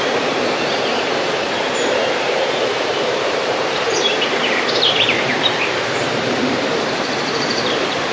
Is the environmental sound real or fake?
fake